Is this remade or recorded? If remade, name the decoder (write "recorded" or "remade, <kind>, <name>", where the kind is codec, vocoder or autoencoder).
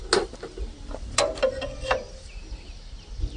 recorded